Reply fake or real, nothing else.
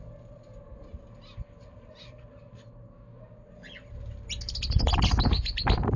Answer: real